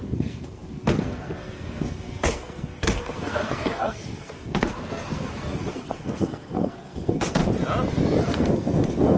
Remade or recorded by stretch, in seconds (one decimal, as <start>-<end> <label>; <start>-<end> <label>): 0.0-7.4 remade; 7.4-8.2 recorded; 8.2-9.2 remade